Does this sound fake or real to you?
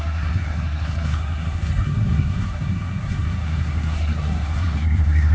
fake